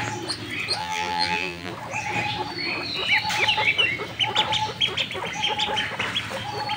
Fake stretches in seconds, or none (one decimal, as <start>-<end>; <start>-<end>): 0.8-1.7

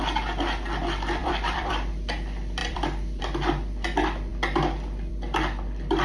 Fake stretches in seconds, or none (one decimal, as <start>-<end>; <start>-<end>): 1.2-1.9; 2.6-3.2

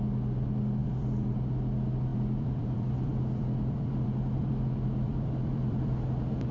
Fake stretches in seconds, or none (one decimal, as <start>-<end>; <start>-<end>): 0.8-1.3; 2.1-6.0

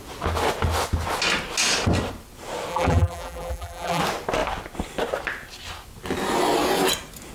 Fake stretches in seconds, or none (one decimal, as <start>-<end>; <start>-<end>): 2.7-4.0

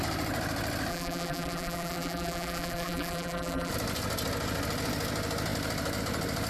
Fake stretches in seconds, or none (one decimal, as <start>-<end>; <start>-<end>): 0.9-3.7

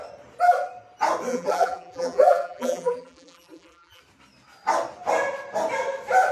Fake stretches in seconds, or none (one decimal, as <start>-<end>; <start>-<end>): 1.3-4.0

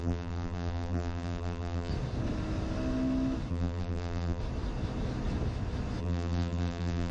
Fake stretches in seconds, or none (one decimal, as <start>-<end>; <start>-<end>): 0.0-1.9; 3.5-4.4; 6.0-7.1

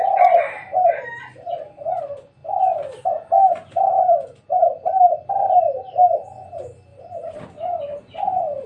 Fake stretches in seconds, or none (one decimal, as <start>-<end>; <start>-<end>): 4.6-5.1; 6.9-8.0